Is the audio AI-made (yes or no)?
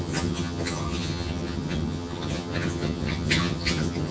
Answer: yes